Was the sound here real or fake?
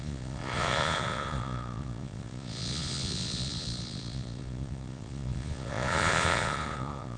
fake